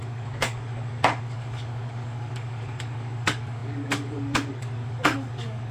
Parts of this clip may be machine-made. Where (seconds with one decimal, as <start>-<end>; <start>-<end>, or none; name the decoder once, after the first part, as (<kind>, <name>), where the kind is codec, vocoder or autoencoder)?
0.0-5.7 (codec, DAC)